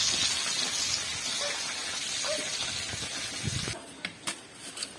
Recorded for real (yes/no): yes